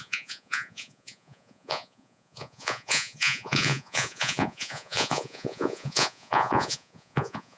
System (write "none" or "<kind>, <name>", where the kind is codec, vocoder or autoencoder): vocoder, Vocos